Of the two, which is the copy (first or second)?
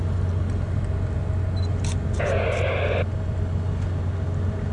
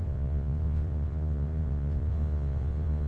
second